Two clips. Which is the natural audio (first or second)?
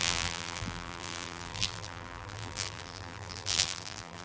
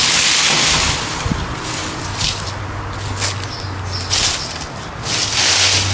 second